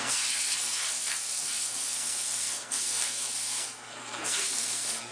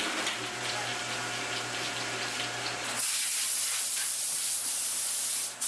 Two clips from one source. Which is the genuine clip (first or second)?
second